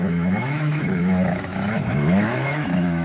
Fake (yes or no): yes